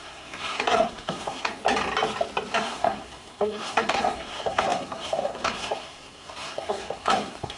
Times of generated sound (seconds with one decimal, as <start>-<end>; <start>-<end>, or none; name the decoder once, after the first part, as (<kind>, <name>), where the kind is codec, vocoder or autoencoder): 0.0-1.6 (codec, SNAC); 2.5-7.6